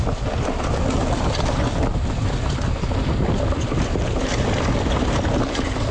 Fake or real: real